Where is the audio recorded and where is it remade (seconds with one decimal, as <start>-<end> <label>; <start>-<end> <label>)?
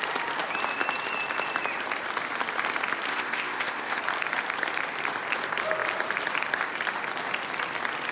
0.0-3.1 recorded; 3.1-4.0 remade; 4.0-8.1 recorded